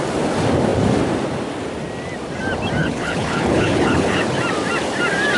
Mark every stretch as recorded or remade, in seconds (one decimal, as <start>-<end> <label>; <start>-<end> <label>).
0.0-2.8 recorded; 2.8-4.2 remade; 4.2-5.4 recorded